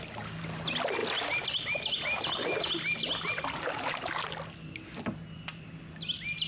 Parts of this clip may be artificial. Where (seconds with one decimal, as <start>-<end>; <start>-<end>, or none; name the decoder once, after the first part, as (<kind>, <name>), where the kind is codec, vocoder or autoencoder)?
none